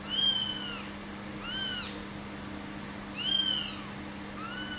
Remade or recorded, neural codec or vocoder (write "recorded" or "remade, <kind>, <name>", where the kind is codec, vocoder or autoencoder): recorded